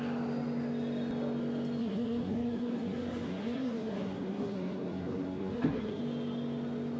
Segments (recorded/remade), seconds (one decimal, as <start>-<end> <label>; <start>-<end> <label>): 0.0-1.8 recorded; 1.8-6.0 remade; 6.0-7.0 recorded